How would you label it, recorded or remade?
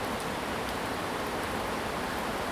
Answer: recorded